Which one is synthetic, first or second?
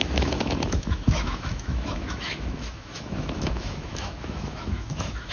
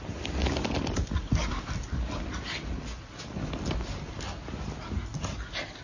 first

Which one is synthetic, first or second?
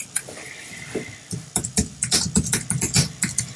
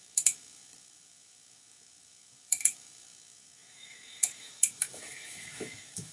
second